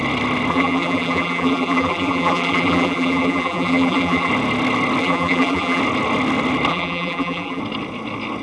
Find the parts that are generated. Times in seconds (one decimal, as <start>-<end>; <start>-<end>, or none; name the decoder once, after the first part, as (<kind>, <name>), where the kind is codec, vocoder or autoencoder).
0.5-4.3 (vocoder, BigVGAN v2); 5.0-5.8; 6.7-7.6